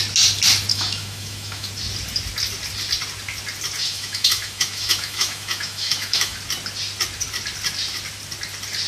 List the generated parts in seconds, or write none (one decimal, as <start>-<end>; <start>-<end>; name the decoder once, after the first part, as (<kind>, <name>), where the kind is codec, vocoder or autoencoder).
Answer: 0.7-1.7 (autoencoder, DAC-VAE); 3.8-6.4